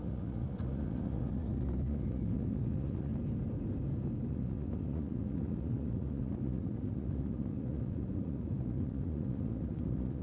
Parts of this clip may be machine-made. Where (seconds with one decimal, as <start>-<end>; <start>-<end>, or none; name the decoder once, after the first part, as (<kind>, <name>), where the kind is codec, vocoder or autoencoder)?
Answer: 0.0-3.1 (vocoder, Vocos); 4.3-10.2